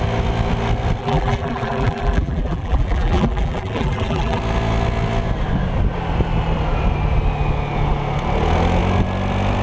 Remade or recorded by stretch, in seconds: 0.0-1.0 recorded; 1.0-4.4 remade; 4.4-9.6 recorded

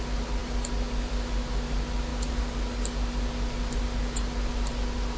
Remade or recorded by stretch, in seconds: 0.0-5.2 recorded

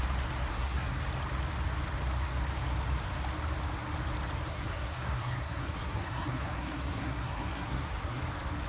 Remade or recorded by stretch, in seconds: 0.0-0.5 recorded; 0.5-1.0 remade; 1.0-4.5 recorded; 4.5-8.2 remade; 8.2-8.7 recorded

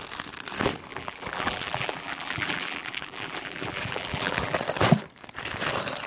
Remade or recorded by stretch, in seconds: 0.0-0.9 recorded; 0.9-4.6 remade; 4.6-6.1 recorded